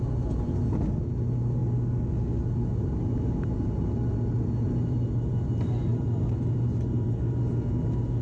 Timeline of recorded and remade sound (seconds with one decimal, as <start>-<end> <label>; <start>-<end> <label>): 0.0-8.2 recorded